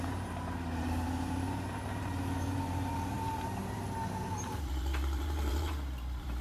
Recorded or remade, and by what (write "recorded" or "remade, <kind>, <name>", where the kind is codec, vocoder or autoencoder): remade, vocoder, BigVGAN v2